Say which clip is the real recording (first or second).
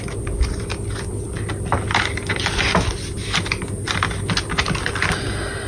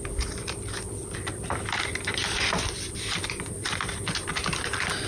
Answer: first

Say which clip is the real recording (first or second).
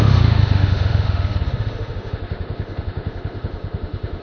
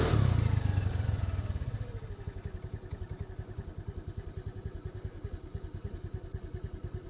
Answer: second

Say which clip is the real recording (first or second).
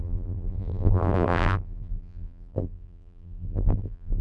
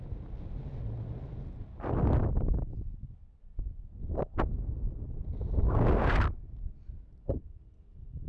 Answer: second